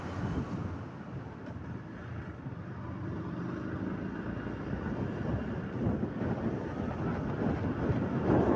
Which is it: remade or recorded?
recorded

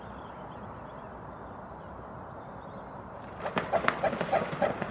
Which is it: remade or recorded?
recorded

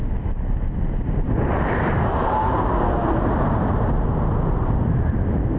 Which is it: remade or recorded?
recorded